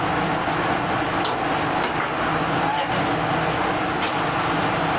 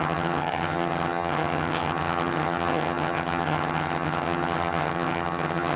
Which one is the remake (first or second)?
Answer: second